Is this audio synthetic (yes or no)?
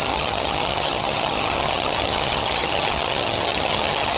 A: yes